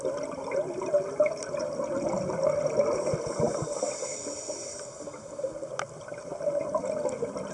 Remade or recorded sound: recorded